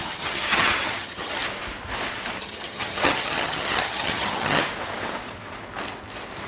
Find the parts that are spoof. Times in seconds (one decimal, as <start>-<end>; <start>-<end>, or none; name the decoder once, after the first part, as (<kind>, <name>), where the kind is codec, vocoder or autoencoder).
0.0-1.4 (vocoder, HiFi-GAN); 2.4-4.6